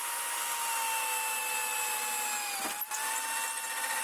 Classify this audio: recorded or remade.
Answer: recorded